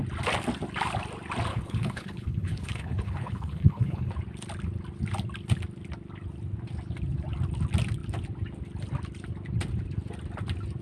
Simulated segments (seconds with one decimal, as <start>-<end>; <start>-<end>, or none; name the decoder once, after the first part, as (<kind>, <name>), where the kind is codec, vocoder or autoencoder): 1.5-4.1 (codec, HILCodec)